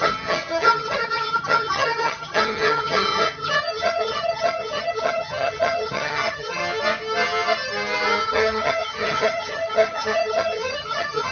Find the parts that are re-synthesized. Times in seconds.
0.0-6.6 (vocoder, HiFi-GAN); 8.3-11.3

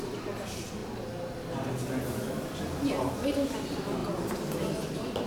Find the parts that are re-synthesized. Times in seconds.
none

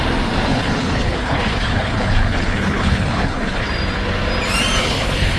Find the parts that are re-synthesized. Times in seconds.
0.5-3.7 (codec, HILCodec); 4.8-5.4

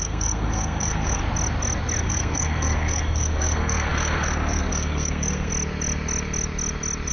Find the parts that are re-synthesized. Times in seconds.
0.0-1.2 (codec, SNAC); 2.0-5.5

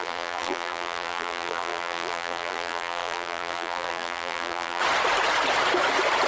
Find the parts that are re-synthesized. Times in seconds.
0.0-4.8 (vocoder, BigVGAN v2)

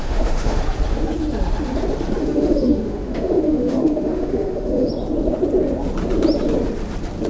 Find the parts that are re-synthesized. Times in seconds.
0.0-0.6 (autoencoder, DAC-VAE); 2.2-4.9

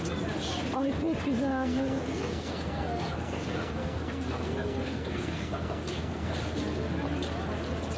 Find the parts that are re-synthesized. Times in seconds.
1.5-6.3 (codec, SNAC)